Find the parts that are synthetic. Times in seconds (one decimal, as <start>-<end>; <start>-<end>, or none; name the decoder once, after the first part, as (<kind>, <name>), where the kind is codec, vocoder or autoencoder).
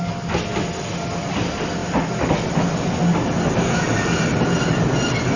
none